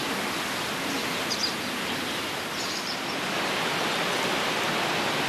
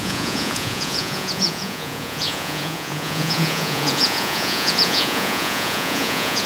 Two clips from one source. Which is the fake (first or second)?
second